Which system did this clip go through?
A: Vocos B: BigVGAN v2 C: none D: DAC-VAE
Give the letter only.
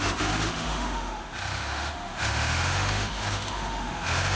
D